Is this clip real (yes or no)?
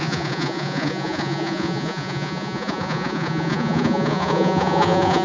no